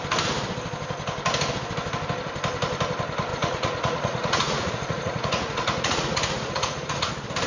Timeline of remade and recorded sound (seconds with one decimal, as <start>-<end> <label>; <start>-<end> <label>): 0.0-3.3 recorded; 3.3-7.1 remade; 7.1-7.5 recorded